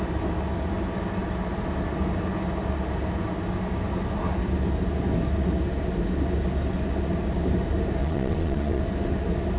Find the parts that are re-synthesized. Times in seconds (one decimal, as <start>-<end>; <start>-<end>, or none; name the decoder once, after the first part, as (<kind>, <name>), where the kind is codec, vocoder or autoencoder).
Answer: 8.0-8.8 (vocoder, Vocos)

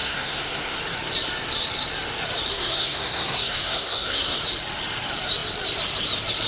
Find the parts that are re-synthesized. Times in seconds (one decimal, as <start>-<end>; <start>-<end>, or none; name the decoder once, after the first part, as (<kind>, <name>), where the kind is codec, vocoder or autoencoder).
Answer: 0.0-0.8 (codec, SNAC); 2.5-4.4

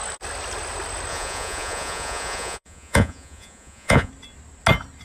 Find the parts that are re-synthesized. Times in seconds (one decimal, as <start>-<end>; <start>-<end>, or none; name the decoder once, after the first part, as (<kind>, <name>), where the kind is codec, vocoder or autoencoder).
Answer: 1.1-4.1 (vocoder, Vocos)

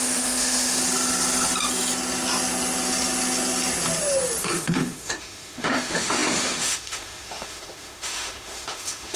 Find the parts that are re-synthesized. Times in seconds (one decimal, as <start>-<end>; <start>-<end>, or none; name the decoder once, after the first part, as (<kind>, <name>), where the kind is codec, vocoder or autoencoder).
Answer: 0.0-0.8 (autoencoder, DAC-VAE); 4.4-9.2

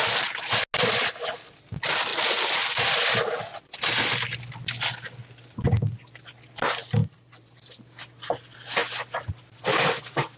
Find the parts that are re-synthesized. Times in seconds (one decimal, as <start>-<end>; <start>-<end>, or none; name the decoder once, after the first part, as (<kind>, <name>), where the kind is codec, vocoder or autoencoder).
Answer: 7.0-7.8 (vocoder, BigVGAN v2)